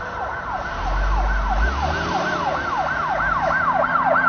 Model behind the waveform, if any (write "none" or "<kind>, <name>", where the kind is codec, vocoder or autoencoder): none